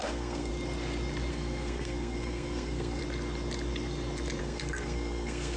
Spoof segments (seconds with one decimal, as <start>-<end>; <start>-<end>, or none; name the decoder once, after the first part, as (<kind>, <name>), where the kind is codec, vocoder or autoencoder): 0.0-0.5 (codec, SNAC); 1.3-3.0; 4.4-5.6